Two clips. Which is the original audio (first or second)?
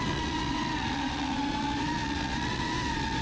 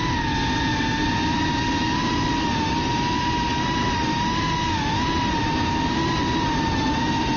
second